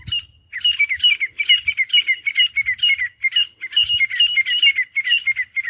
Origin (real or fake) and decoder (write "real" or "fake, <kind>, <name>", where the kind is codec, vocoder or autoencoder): real